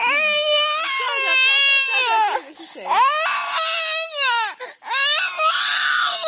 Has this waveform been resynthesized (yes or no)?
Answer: no